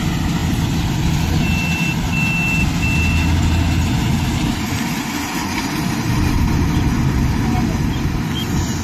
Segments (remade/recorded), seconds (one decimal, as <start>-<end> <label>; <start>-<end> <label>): 0.0-8.8 recorded